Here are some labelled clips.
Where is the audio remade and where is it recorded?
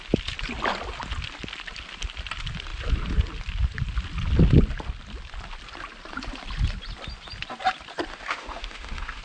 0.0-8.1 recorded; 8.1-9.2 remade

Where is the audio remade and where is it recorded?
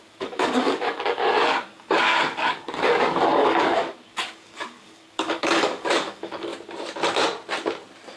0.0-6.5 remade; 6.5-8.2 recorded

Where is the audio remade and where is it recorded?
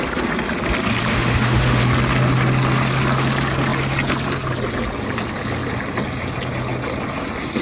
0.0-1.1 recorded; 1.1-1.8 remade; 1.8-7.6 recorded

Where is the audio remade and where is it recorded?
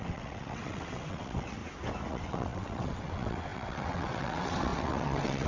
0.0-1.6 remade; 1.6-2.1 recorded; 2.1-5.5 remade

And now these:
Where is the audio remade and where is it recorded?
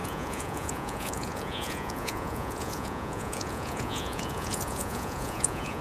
0.0-5.8 remade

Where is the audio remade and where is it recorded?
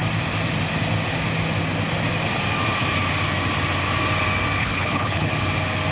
0.0-4.6 recorded; 4.6-5.3 remade; 5.3-5.9 recorded